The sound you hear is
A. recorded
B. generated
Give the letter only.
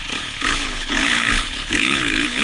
B